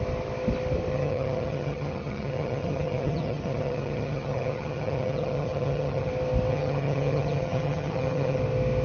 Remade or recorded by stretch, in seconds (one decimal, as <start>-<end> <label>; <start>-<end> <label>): 0.0-0.9 recorded; 0.9-6.1 remade; 6.1-6.5 recorded; 6.5-8.4 remade; 8.4-8.8 recorded